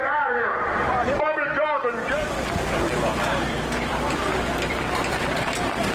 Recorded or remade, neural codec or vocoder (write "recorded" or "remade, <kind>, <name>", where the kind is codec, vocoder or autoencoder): remade, vocoder, BigVGAN v2